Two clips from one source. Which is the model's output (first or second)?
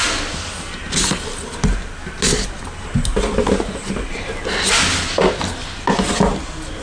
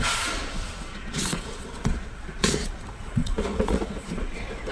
second